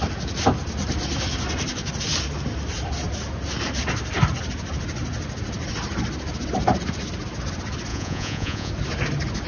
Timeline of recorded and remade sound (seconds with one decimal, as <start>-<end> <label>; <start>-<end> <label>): 0.0-7.9 recorded; 7.9-8.7 remade; 8.7-9.5 recorded